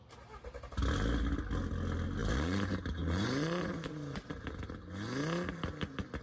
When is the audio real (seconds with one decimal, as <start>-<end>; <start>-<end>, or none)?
0.0-2.2; 4.7-6.2